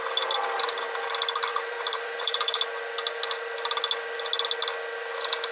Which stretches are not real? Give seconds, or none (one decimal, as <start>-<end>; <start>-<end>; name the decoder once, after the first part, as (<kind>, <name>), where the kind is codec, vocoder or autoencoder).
1.5-2.6 (vocoder, BigVGAN v2)